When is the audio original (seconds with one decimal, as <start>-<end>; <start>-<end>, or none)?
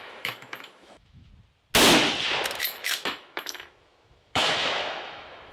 1.3-2.6